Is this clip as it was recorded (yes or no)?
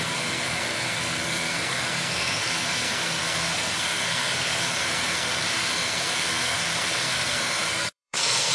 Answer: no